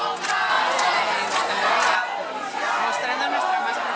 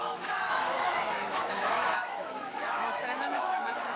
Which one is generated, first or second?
second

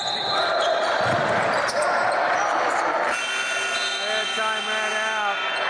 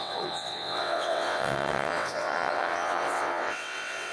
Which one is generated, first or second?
second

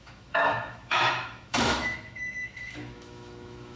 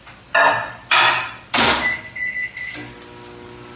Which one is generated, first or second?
first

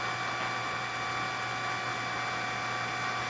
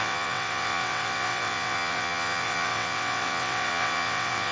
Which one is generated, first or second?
second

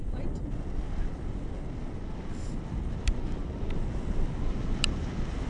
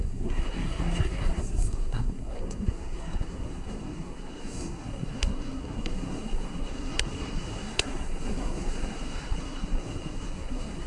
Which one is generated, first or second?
second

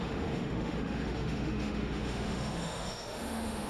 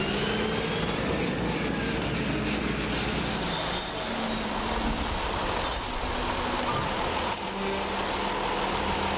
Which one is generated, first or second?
first